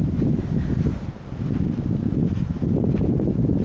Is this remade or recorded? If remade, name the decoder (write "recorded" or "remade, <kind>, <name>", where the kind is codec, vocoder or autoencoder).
recorded